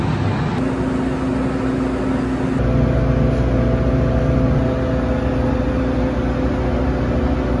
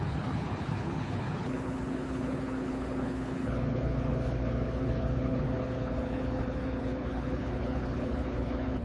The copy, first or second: second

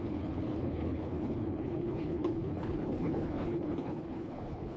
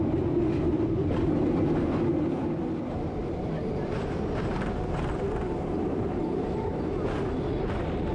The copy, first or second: first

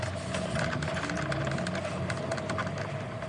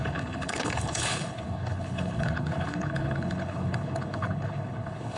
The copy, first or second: second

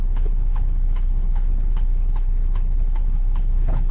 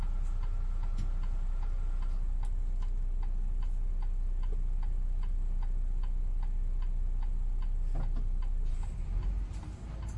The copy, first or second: first